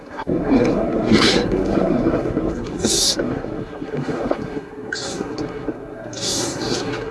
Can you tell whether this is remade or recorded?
remade